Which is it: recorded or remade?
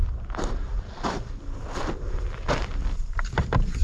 remade